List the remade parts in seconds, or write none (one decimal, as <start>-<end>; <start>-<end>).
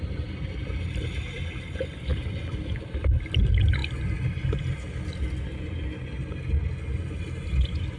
2.1-3.4